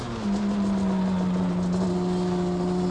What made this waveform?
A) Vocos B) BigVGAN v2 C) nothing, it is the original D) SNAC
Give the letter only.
C